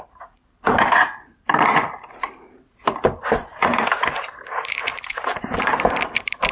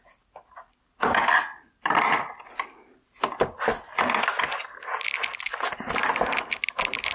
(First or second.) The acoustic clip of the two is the second